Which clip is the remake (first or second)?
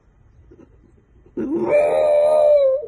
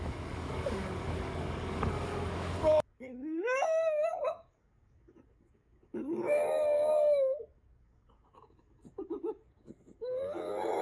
second